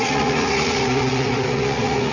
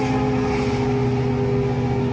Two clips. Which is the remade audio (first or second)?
first